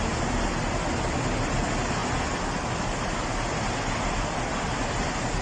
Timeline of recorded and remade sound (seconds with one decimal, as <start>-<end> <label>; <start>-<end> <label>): 0.0-5.4 recorded